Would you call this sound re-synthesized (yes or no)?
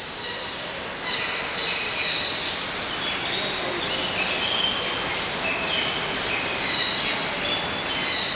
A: no